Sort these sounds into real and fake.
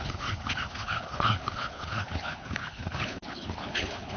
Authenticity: fake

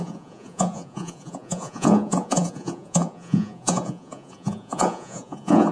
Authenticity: fake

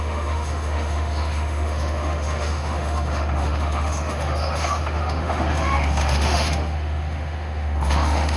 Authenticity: fake